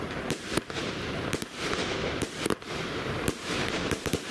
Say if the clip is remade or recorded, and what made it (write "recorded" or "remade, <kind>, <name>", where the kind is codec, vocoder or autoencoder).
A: remade, vocoder, BigVGAN v2